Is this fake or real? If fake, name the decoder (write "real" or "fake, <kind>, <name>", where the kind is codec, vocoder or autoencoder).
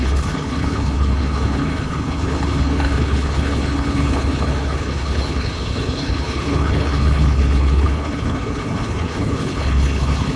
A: fake, codec, HILCodec